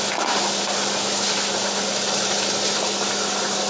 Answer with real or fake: real